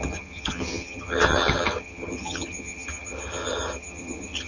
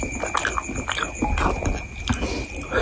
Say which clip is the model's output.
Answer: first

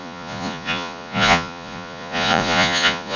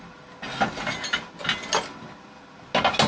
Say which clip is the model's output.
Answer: first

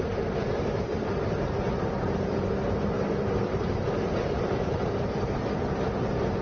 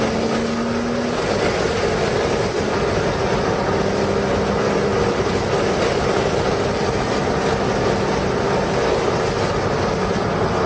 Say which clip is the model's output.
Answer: first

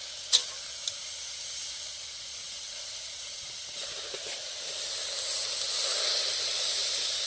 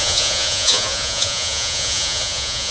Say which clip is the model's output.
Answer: second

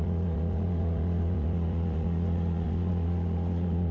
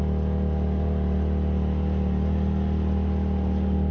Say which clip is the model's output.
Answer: first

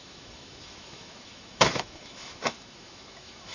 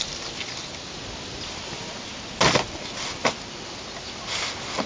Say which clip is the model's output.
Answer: first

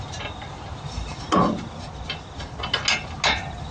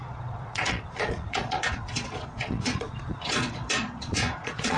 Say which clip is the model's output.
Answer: second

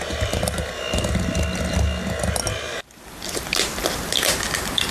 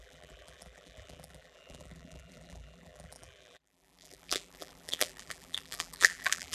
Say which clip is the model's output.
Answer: second